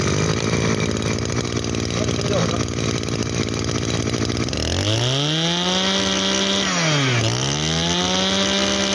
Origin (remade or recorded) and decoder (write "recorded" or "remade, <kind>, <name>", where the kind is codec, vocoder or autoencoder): recorded